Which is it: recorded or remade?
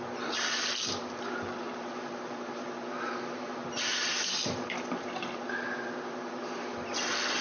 recorded